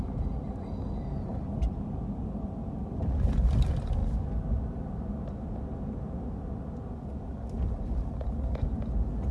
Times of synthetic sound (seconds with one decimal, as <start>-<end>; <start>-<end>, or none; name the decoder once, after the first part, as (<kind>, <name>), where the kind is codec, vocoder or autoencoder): none